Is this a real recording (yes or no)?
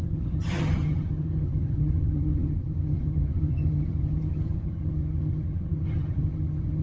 no